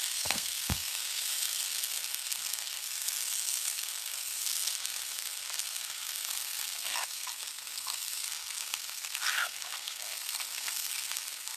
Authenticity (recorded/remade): remade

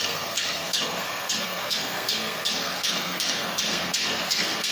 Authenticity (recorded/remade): remade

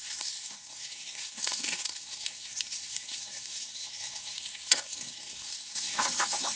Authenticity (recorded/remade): remade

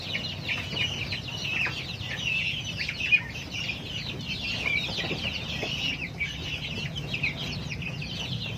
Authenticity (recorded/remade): recorded